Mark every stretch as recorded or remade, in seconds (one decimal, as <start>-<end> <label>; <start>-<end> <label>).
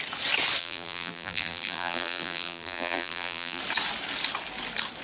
0.0-0.6 recorded; 0.6-3.6 remade; 3.6-5.0 recorded